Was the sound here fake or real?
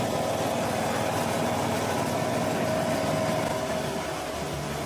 real